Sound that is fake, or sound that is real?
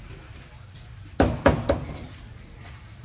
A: real